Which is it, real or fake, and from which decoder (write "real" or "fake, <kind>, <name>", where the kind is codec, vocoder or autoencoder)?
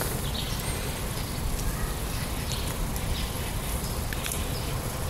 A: real